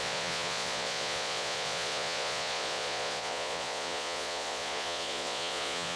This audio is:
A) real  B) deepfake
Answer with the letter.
B